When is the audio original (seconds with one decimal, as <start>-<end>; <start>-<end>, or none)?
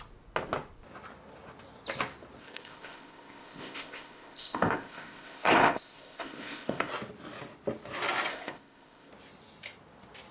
0.0-2.4; 6.9-8.3; 9.1-10.3